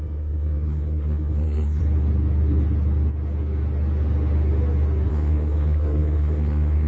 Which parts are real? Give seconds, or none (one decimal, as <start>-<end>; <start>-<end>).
1.8-5.1